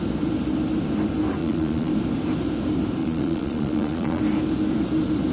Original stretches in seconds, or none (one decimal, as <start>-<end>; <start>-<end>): 0.0-1.4; 1.9-3.0; 4.2-5.3